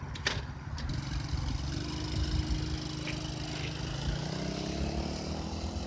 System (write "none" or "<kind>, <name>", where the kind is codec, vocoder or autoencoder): none